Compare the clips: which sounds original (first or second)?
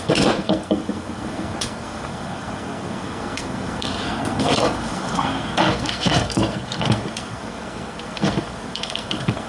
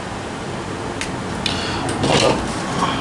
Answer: second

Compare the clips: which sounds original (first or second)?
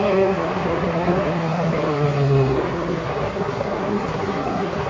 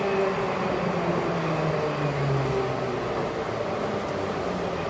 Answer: second